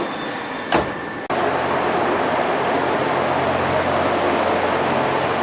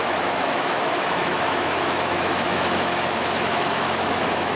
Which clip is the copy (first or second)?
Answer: second